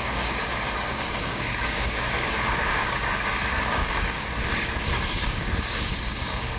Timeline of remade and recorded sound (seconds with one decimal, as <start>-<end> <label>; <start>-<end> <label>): 0.0-6.6 remade